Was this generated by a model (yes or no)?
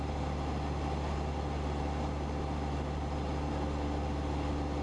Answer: no